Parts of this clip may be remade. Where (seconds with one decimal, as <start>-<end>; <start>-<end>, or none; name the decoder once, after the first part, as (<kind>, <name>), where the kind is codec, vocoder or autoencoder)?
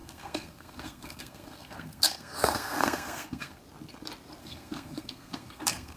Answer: 0.0-3.6 (codec, SNAC); 4.4-6.0